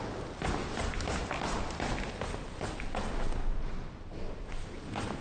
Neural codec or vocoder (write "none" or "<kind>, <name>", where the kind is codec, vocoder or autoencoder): none